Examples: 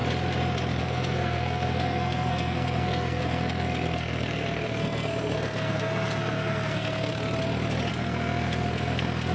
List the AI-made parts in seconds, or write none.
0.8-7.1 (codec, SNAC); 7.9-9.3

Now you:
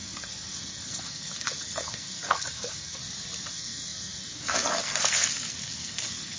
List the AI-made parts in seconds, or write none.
0.0-3.0 (codec, SNAC); 3.5-6.4

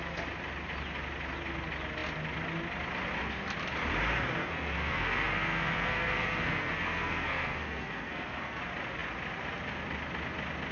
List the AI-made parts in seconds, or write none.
4.4-8.6 (codec, SNAC)